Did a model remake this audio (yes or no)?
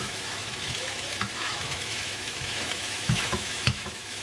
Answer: yes